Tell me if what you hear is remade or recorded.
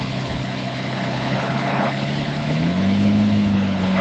remade